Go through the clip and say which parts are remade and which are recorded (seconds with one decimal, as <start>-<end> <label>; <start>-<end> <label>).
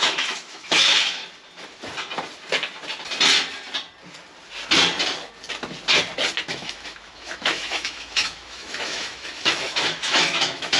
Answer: 0.0-1.2 remade; 1.2-6.4 recorded; 6.4-10.8 remade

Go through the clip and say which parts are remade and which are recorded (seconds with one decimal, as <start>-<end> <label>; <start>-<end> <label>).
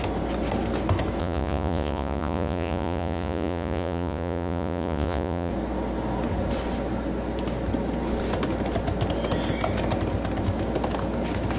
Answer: 0.0-1.2 recorded; 1.2-5.5 remade; 5.5-11.6 recorded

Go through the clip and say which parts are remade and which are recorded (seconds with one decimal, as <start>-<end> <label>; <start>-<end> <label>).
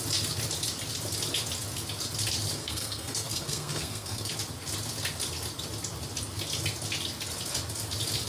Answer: 0.0-2.6 recorded; 2.6-4.3 remade; 4.3-8.3 recorded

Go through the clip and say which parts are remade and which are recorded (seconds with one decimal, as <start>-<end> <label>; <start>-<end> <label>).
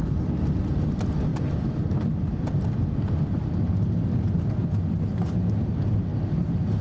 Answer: 0.0-6.8 recorded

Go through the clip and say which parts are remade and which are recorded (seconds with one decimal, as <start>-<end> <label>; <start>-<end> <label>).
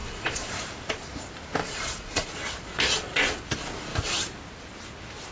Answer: 0.0-0.5 remade; 0.5-1.6 recorded; 1.6-2.3 remade; 2.3-5.3 recorded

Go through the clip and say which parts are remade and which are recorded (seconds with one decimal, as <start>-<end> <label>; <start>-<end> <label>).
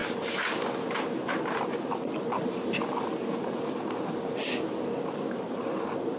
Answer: 0.0-6.2 recorded